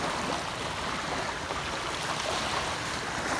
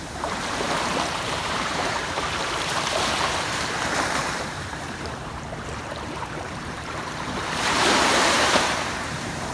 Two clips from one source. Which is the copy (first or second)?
second